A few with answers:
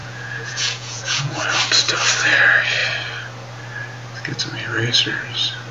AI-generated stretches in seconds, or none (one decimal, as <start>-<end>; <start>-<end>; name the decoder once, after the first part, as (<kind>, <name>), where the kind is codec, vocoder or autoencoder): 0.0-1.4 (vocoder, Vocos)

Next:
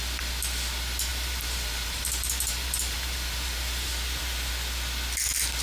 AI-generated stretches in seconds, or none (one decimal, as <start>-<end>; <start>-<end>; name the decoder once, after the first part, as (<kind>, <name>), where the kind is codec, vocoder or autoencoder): 1.1-4.5 (vocoder, BigVGAN v2)

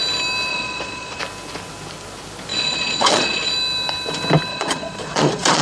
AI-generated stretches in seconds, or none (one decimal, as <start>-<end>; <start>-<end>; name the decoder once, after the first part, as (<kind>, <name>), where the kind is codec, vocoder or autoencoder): 0.5-1.2 (vocoder, Vocos); 2.5-3.5; 4.5-5.6